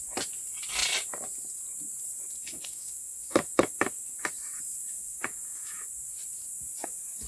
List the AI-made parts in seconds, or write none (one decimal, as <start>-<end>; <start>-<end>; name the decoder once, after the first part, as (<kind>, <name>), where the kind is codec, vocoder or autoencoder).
2.4-4.1 (autoencoder, DAC-VAE); 4.8-5.9